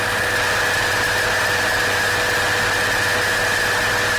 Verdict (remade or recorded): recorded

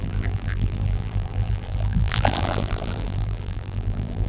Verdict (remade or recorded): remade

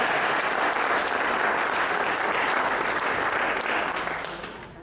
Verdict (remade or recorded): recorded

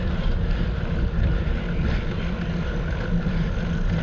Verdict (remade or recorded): recorded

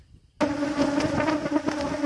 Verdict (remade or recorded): recorded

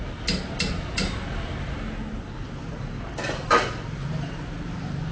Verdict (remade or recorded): recorded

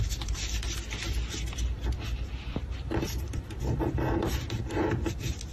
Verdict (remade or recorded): remade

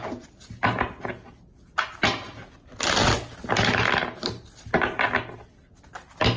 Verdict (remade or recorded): recorded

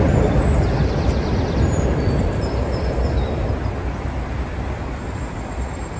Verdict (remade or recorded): remade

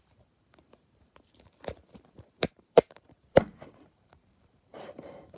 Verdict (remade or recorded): remade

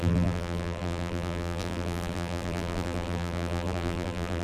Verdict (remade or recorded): remade